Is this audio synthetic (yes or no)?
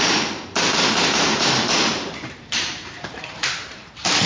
yes